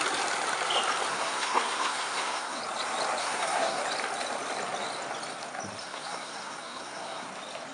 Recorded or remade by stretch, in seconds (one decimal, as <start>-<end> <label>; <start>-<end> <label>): 0.0-1.1 recorded; 1.1-2.6 remade; 2.6-3.2 recorded; 3.2-3.8 remade; 3.8-5.8 recorded; 5.8-7.3 remade; 7.3-7.7 recorded